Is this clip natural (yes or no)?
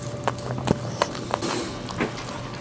yes